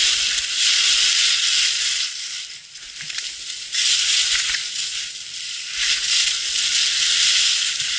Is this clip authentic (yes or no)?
yes